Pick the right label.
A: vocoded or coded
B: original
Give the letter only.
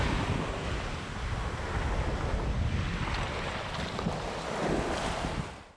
B